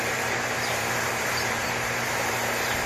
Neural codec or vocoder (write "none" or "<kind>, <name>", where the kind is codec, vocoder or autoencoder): vocoder, BigVGAN v2